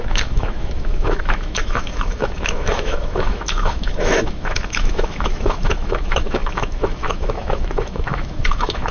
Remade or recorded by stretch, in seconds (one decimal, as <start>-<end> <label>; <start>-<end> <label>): 0.0-8.9 remade